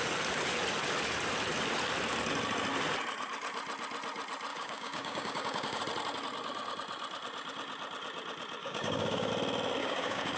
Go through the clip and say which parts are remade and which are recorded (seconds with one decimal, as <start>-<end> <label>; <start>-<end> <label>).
0.0-4.5 recorded; 4.5-5.8 remade; 5.8-8.6 recorded; 8.6-9.3 remade; 9.3-9.8 recorded; 9.8-10.4 remade